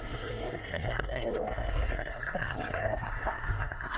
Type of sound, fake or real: fake